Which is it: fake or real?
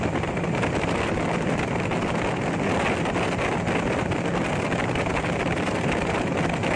real